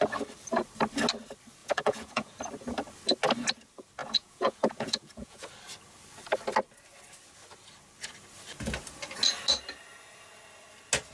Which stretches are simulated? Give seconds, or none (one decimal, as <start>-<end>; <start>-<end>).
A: 1.6-2.4; 4.0-5.5